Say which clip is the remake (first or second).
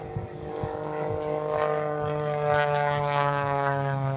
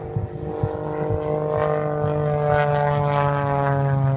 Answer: first